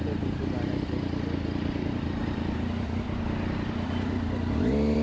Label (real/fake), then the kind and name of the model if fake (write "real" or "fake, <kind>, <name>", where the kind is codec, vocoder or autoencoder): real